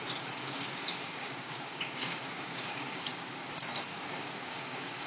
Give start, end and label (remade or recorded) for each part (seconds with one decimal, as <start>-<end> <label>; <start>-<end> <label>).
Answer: 0.0-0.4 recorded; 0.4-3.5 remade; 3.5-3.9 recorded; 3.9-5.1 remade

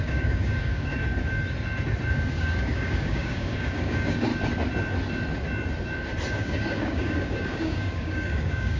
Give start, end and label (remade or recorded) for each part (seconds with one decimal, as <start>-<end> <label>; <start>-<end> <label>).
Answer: 0.0-1.0 remade; 1.0-2.1 recorded; 2.1-4.3 remade; 4.3-6.3 recorded; 6.3-8.8 remade

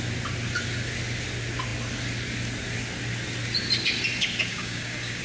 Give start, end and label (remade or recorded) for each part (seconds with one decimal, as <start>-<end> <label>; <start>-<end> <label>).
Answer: 0.0-4.5 recorded; 4.5-5.2 remade

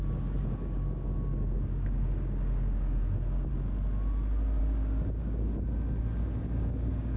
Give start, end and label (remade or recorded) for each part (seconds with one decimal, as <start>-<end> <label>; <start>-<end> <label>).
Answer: 0.0-3.5 remade; 3.5-4.6 recorded; 4.6-5.5 remade; 5.5-6.0 recorded; 6.0-7.2 remade

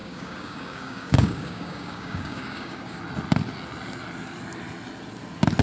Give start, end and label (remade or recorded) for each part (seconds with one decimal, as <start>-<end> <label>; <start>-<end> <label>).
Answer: 0.0-3.0 remade; 3.0-5.6 recorded

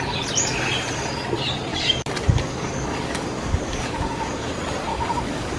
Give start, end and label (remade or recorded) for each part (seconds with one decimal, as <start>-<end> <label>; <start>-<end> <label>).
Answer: 0.0-1.7 recorded; 1.7-4.5 remade; 4.5-4.9 recorded; 4.9-5.6 remade

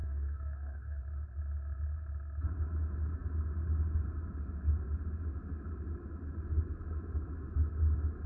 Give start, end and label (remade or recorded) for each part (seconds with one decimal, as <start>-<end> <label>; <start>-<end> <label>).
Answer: 0.0-1.0 remade; 1.0-8.3 recorded